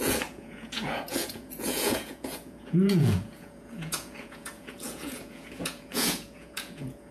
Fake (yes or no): yes